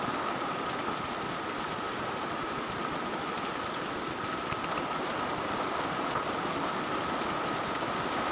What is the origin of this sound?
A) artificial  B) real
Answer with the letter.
B